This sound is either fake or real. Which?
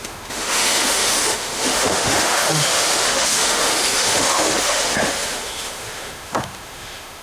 fake